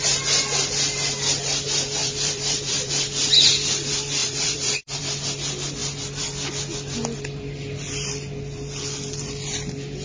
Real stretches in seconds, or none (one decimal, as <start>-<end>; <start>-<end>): 0.0-2.0; 2.9-4.2; 5.0-10.0